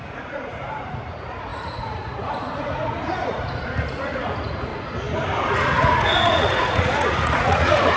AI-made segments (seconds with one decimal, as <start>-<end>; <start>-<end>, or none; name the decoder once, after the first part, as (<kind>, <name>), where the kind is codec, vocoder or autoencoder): 0.0-4.7 (vocoder, Vocos); 5.5-8.0